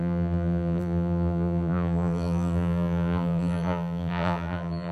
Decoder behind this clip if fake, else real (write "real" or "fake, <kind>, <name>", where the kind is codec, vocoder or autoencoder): fake, vocoder, BigVGAN v2